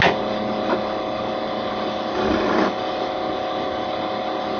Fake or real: real